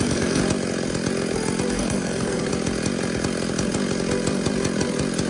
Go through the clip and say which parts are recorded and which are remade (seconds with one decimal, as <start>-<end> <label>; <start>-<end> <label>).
0.0-0.4 remade; 0.4-1.7 recorded; 1.7-2.5 remade; 2.5-5.3 recorded